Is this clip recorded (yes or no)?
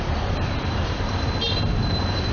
yes